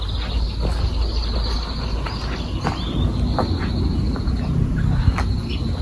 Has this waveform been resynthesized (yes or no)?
no